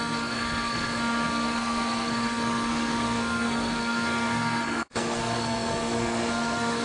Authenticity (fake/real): fake